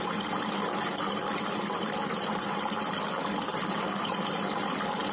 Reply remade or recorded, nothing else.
recorded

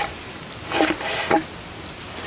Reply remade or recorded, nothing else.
remade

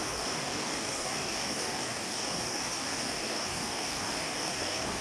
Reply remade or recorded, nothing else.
remade